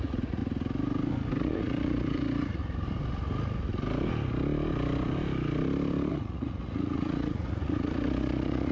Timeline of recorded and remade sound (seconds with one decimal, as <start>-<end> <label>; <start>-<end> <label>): 0.0-0.4 remade; 0.4-1.4 recorded; 1.4-2.6 remade; 2.6-6.1 recorded; 6.1-8.7 remade